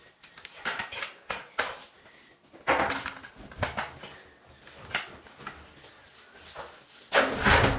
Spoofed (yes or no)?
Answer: no